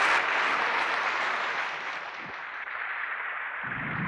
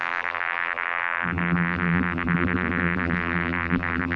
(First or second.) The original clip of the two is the first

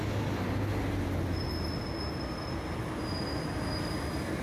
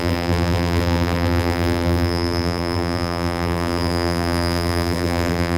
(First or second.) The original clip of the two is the first